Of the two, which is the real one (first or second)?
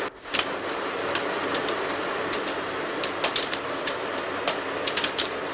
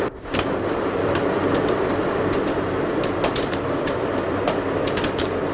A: first